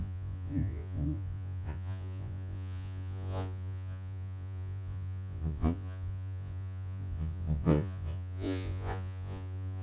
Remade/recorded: remade